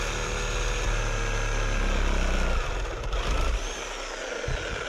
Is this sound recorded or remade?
recorded